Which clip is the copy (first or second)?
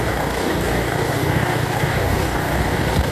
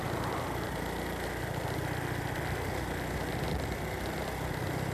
first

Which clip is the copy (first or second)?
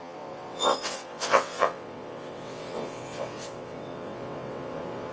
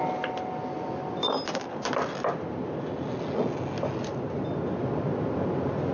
first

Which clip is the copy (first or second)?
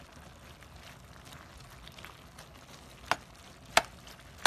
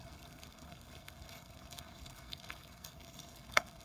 second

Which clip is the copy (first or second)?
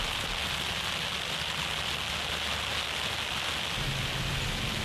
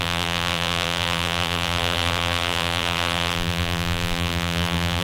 second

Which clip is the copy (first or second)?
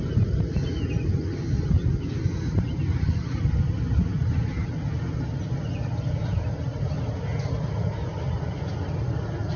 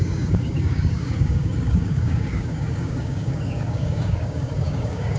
second